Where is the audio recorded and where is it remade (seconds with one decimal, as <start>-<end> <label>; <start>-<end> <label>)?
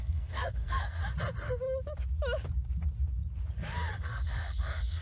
0.0-1.0 remade; 1.0-4.0 recorded; 4.0-5.0 remade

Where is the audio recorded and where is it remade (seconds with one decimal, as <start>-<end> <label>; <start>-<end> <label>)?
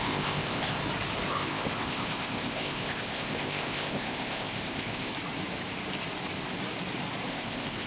0.0-0.8 remade; 0.8-1.3 recorded; 1.3-5.1 remade; 5.1-7.3 recorded; 7.3-7.9 remade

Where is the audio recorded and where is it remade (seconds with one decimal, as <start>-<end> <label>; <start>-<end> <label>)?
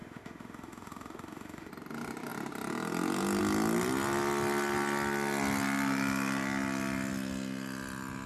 0.0-1.7 remade; 1.7-8.3 recorded